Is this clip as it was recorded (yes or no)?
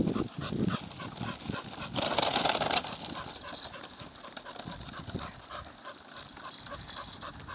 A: yes